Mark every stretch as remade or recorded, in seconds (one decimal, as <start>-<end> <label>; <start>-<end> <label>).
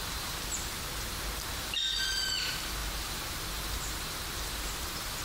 0.0-5.2 recorded